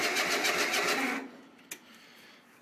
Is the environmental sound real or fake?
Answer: real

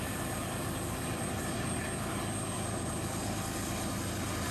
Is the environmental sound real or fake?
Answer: real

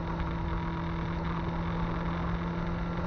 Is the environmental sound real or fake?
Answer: real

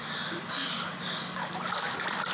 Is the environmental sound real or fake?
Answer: real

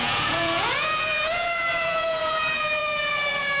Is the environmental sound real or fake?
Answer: fake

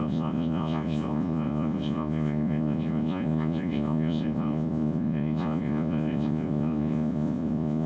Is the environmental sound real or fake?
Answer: fake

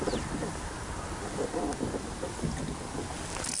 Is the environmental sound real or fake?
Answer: real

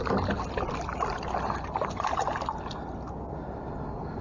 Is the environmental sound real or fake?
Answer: real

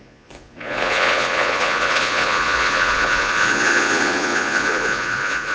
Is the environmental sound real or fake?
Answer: fake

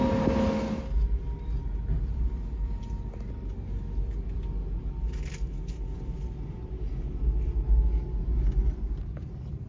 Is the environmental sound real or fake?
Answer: real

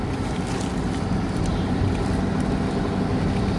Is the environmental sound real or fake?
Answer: real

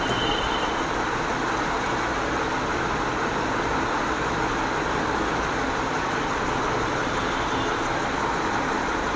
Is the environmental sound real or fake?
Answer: real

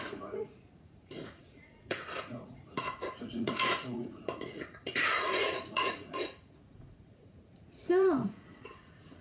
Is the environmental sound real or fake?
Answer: fake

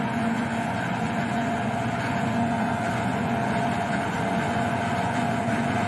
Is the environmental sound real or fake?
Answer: fake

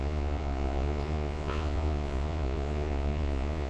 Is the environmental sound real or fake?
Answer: fake